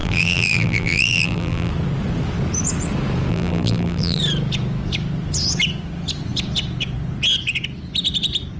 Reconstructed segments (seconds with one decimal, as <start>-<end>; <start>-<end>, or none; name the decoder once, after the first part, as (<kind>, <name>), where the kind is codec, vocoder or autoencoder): 0.0-1.7 (vocoder, BigVGAN v2); 3.3-4.2